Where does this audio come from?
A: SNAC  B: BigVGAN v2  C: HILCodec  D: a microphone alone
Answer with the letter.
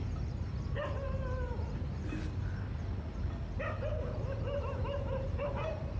D